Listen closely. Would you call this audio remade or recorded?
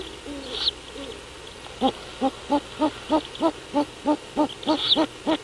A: recorded